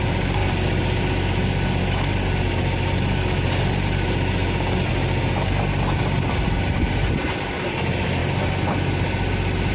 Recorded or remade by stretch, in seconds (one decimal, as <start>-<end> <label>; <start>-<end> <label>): 0.0-9.7 recorded